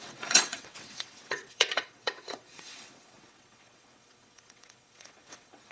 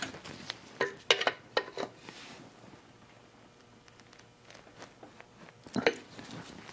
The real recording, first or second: second